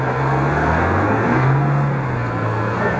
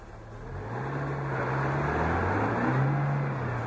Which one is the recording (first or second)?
second